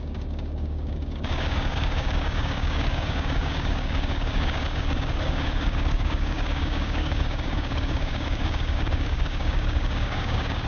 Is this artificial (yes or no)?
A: yes